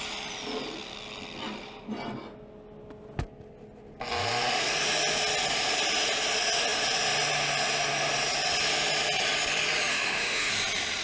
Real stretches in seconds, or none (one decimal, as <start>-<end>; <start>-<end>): 0.0-9.9; 10.5-11.0